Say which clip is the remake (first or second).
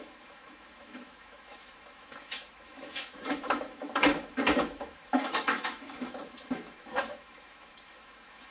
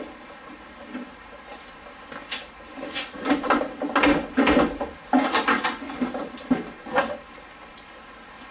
first